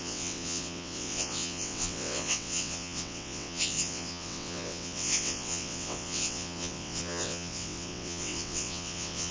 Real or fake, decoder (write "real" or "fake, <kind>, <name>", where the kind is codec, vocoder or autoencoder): fake, vocoder, WaveNeXt